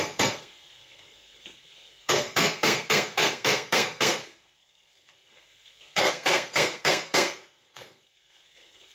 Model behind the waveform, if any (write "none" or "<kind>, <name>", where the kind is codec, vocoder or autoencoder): codec, SNAC